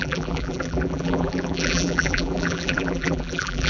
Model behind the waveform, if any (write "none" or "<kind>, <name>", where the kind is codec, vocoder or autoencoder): vocoder, BigVGAN v2